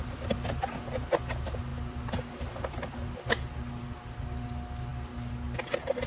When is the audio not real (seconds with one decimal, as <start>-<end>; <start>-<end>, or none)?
none